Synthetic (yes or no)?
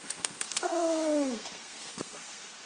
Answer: yes